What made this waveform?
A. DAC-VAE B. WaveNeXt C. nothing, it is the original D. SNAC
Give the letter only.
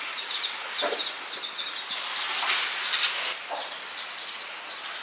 C